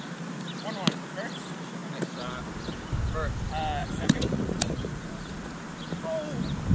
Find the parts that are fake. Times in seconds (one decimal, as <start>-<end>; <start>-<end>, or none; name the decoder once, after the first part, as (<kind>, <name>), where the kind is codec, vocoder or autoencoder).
3.8-5.3 (vocoder, Vocos)